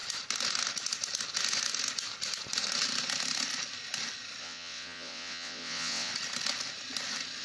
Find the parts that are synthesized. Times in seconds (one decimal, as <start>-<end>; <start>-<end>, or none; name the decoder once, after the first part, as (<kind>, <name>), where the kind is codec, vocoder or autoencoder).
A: 4.4-6.1 (vocoder, WaveNeXt)